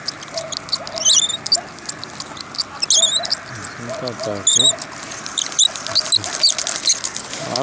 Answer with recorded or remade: recorded